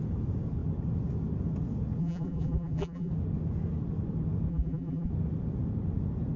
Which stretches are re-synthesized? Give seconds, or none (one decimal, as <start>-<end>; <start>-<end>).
2.0-3.1; 4.5-5.1